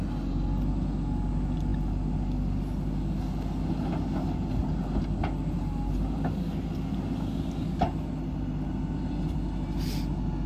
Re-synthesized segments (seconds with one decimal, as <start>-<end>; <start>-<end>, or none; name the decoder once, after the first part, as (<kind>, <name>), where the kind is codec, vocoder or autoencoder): none